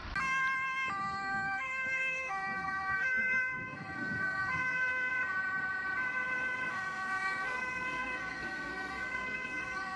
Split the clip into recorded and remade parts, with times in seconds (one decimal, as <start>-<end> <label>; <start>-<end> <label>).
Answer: 0.0-1.0 recorded; 1.0-5.1 remade; 5.1-6.7 recorded; 6.7-10.0 remade